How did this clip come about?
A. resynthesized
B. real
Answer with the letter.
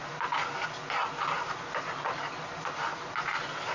B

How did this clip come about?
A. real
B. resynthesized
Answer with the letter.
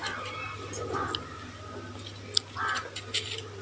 A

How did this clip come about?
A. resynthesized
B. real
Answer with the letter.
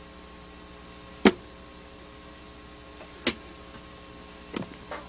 B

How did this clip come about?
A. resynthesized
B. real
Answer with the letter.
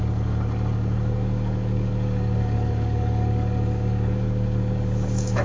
A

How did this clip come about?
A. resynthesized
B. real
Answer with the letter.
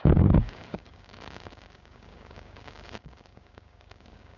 A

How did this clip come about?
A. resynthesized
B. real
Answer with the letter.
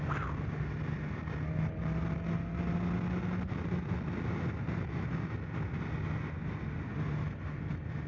B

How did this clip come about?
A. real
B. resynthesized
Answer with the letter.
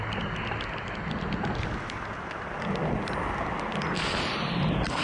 A